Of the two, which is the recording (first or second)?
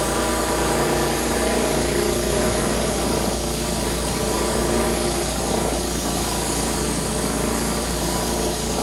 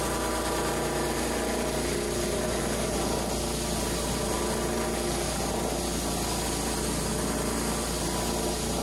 second